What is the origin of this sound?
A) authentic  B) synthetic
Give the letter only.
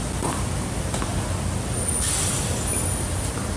A